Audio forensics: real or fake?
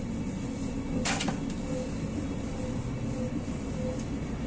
real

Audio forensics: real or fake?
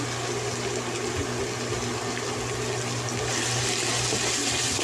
real